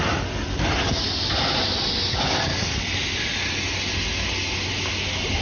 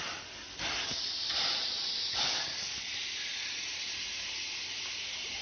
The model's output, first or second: second